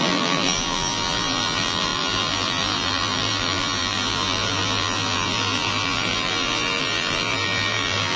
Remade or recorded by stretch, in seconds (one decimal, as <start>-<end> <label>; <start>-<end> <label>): 0.0-8.2 remade